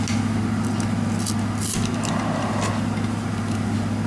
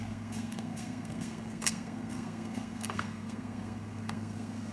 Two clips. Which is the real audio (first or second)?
first